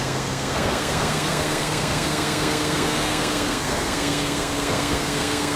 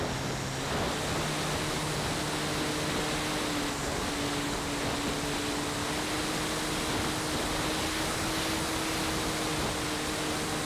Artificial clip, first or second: first